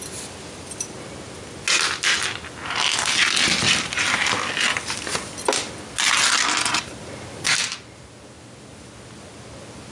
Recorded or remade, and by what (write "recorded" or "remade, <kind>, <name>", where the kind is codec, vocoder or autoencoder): recorded